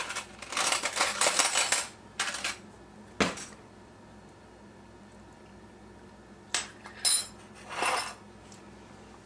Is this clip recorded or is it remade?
recorded